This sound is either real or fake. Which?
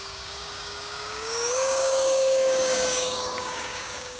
fake